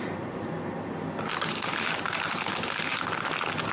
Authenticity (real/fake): real